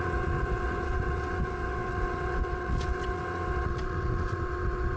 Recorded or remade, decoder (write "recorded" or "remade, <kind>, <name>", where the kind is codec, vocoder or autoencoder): remade, vocoder, WaveNeXt